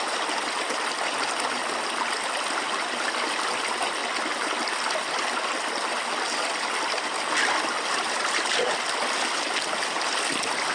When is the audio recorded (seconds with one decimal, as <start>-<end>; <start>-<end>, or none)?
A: 0.0-10.7